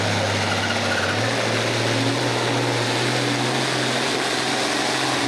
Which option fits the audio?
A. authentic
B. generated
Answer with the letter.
A